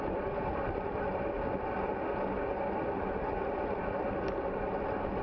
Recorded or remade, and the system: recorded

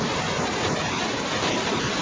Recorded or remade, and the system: recorded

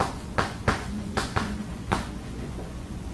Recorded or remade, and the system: remade, vocoder, Vocos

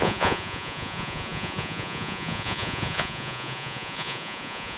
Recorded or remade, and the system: remade, vocoder, Vocos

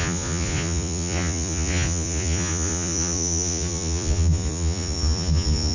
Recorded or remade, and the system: remade, vocoder, Vocos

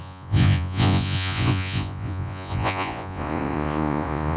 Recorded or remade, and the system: remade, vocoder, Vocos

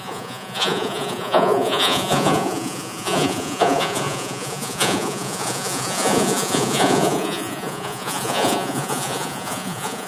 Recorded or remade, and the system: remade, vocoder, Vocos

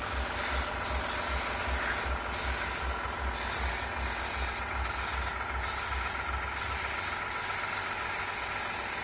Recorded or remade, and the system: recorded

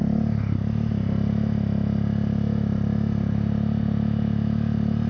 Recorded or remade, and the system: recorded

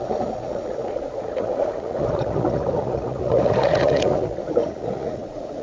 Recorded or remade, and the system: remade, vocoder, Vocos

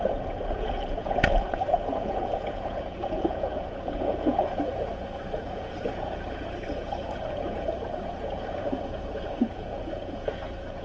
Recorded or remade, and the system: remade, vocoder, Vocos